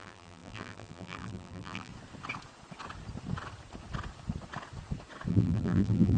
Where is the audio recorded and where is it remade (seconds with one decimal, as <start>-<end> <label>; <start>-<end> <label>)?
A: 0.0-1.9 remade; 1.9-5.3 recorded; 5.3-6.2 remade